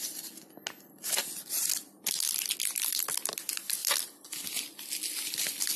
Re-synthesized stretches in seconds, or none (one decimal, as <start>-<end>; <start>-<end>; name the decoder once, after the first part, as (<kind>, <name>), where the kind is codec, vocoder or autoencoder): none